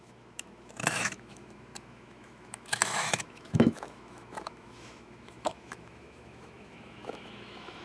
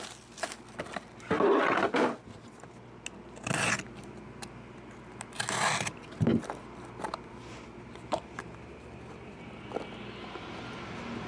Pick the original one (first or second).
second